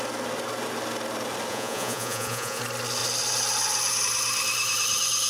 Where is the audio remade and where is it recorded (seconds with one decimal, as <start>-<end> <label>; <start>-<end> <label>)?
0.0-1.5 recorded; 1.5-2.6 remade; 2.6-5.3 recorded